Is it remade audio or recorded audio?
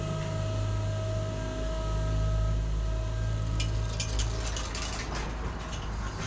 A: recorded